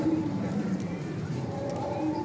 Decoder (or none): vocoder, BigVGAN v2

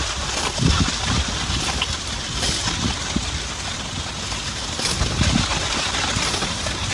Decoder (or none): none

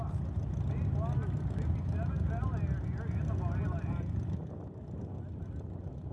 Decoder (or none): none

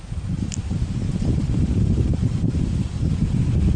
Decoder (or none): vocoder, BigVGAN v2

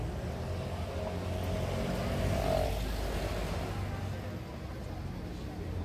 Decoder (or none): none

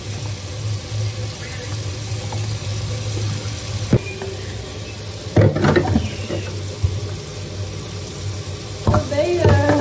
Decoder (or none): none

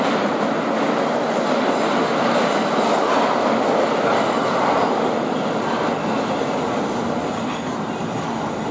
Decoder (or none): none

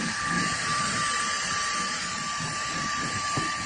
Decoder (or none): vocoder, BigVGAN v2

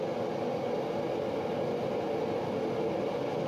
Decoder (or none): none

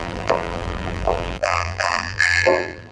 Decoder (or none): vocoder, BigVGAN v2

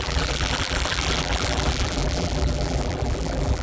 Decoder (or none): vocoder, BigVGAN v2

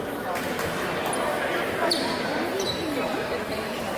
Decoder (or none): none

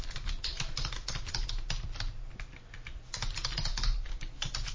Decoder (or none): none